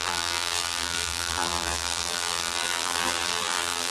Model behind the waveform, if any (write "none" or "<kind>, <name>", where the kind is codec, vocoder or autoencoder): vocoder, BigVGAN v2